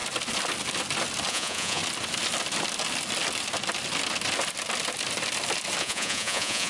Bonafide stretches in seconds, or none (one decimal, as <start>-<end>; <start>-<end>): 0.0-1.3; 1.8-5.8